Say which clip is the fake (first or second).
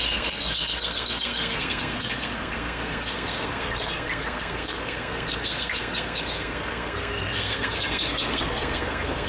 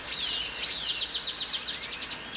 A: first